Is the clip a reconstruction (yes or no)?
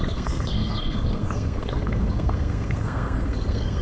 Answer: yes